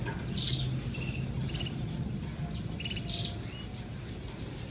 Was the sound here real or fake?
real